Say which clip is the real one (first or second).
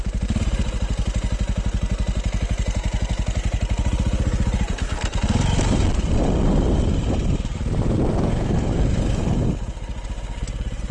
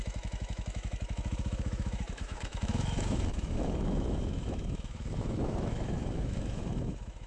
first